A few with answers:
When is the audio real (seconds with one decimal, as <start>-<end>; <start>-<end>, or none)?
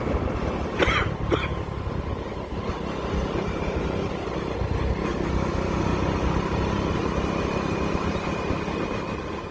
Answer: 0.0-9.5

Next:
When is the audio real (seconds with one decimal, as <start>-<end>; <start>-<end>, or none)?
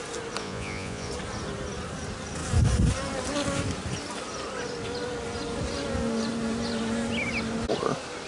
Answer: 0.0-0.4; 1.1-8.3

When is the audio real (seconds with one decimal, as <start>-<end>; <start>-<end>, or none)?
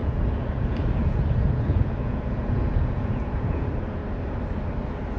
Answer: 4.0-5.2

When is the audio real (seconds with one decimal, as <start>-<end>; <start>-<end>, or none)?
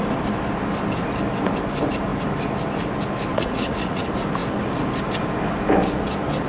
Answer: 0.0-3.3; 4.0-6.5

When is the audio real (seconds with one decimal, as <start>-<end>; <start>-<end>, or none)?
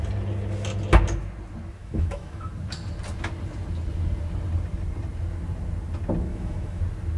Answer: 0.0-1.8; 2.5-6.3; 6.8-7.2